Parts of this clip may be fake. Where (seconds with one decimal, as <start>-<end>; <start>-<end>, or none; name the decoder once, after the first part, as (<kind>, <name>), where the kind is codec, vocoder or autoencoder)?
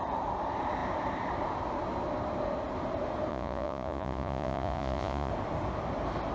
3.3-5.3 (vocoder, Vocos)